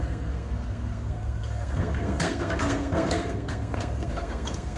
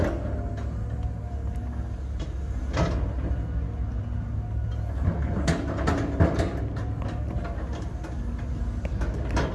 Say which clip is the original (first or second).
second